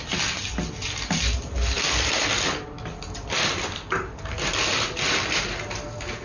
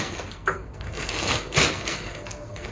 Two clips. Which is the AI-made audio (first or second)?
second